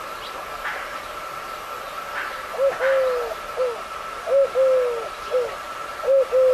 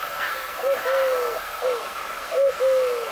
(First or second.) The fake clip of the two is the second